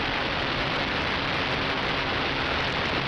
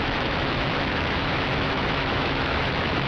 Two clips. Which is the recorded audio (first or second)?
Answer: first